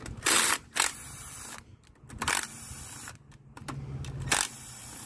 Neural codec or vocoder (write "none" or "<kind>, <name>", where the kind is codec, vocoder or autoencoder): none